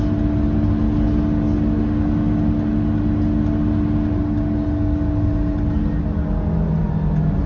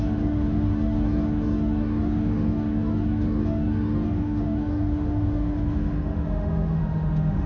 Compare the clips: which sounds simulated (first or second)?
second